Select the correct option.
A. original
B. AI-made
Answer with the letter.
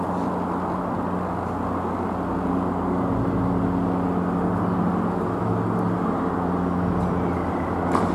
A